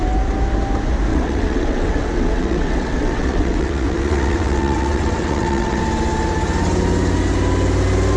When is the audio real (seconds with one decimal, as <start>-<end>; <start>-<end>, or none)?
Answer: 0.0-1.1; 5.8-8.2

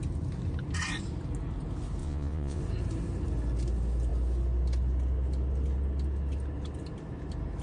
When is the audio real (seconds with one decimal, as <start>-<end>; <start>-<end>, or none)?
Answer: 0.0-2.0; 2.6-7.6

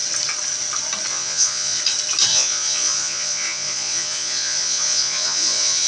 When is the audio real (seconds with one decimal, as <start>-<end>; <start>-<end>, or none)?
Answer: 0.0-1.1; 1.8-2.3

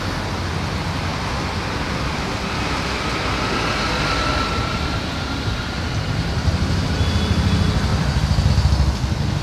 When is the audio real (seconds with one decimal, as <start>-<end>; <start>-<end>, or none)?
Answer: 0.0-4.6; 6.6-7.9; 8.5-9.4

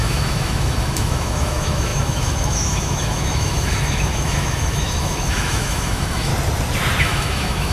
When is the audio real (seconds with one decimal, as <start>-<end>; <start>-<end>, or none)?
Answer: 6.3-7.0

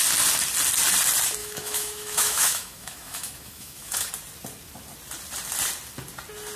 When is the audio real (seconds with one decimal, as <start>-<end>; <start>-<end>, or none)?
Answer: 0.0-1.4; 4.1-6.6

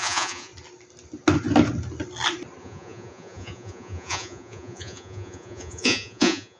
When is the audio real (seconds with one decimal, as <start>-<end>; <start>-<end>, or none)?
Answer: 0.5-2.6

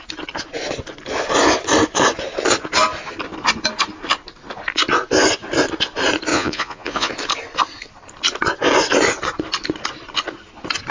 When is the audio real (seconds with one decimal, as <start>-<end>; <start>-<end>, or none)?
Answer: 0.0-6.3; 7.1-10.9